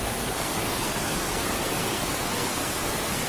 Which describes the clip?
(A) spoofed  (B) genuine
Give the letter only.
A